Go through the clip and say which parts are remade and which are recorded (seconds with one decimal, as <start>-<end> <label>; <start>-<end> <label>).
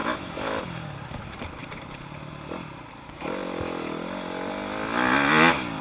0.0-0.6 remade; 0.6-5.8 recorded